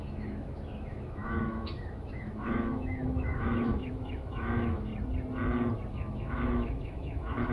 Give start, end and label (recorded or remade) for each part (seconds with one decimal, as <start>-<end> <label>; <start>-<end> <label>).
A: 0.0-4.9 remade; 4.9-5.9 recorded; 5.9-7.5 remade